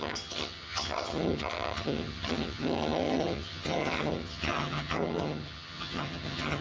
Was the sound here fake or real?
fake